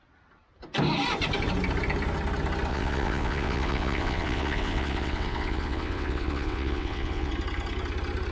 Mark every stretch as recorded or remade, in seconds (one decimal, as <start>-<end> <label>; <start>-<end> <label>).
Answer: 0.0-2.7 recorded; 2.7-7.3 remade; 7.3-8.3 recorded